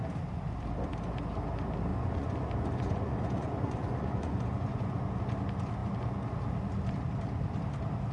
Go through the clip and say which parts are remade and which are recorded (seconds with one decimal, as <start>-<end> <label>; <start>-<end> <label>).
0.0-1.9 recorded; 1.9-5.2 remade; 5.2-8.1 recorded